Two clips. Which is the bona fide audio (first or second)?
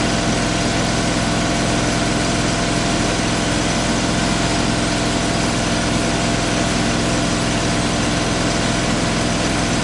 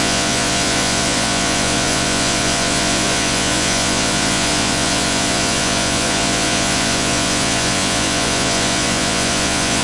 first